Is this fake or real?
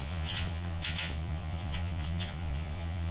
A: fake